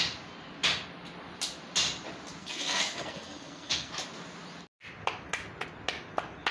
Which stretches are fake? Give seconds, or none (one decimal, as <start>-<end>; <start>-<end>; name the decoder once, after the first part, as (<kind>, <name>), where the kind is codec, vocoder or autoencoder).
2.4-3.9 (codec, SNAC)